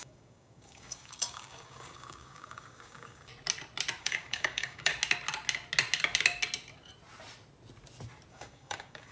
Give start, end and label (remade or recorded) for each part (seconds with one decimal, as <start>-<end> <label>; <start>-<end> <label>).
0.0-3.3 remade; 3.3-4.0 recorded; 4.0-4.9 remade; 4.9-8.3 recorded; 8.3-9.1 remade